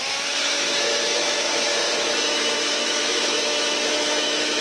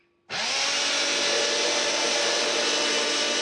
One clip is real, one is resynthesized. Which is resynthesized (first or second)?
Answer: first